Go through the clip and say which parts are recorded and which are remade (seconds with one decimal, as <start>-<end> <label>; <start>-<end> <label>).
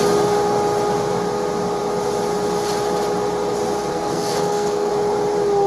0.0-3.9 recorded; 3.9-4.9 remade; 4.9-5.7 recorded